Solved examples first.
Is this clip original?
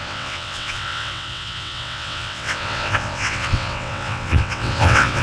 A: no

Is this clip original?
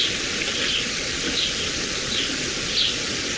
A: yes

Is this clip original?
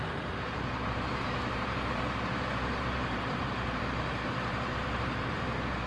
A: no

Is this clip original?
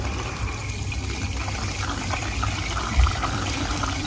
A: no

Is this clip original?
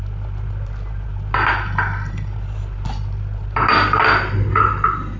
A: yes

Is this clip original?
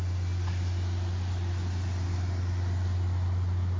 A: yes